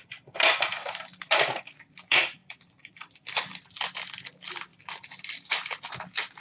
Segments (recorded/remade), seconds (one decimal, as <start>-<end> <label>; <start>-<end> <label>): 0.0-2.4 recorded; 2.4-3.9 remade; 3.9-4.7 recorded; 4.7-5.8 remade; 5.8-6.4 recorded